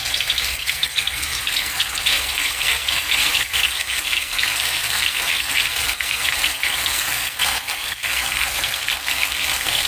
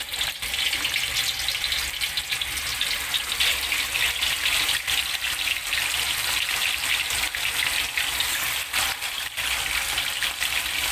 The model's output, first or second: first